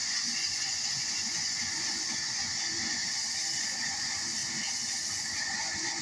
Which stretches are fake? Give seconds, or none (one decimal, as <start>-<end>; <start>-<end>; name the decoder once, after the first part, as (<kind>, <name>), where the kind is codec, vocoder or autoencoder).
0.0-3.0 (vocoder, Vocos); 3.6-4.4; 5.1-6.0